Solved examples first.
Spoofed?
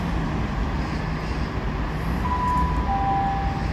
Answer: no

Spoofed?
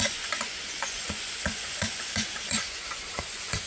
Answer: yes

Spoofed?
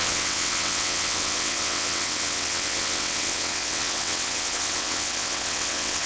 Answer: yes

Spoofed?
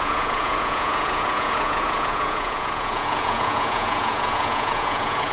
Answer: yes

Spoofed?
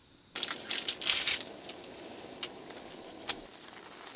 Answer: no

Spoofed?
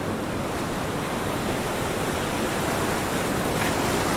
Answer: yes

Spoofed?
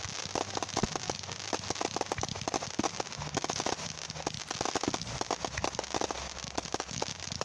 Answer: no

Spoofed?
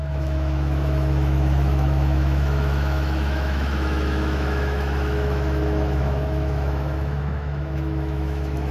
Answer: yes